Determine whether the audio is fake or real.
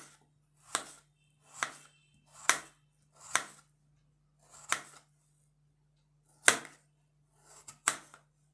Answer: real